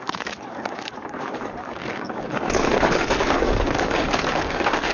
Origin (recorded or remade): remade